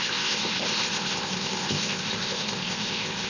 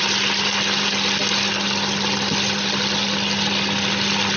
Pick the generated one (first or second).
first